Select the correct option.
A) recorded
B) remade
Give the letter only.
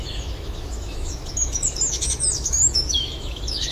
B